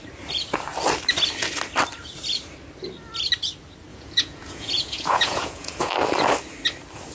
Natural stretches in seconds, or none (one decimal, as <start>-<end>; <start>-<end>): 0.0-3.9; 5.9-7.1